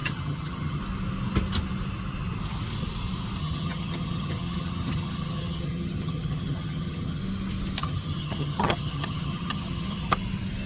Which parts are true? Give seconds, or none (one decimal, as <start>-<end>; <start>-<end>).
0.8-3.4; 7.2-7.8; 10.1-10.7